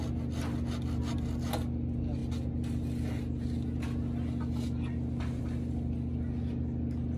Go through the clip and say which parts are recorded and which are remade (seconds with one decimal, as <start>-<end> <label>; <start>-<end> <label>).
0.0-7.2 recorded